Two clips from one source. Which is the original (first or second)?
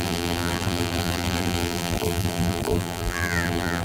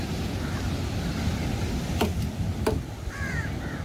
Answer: second